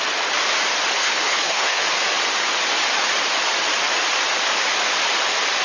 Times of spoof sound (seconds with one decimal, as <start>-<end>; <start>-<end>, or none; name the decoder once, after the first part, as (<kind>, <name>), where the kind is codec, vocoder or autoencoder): 1.0-1.8 (codec, HILCodec)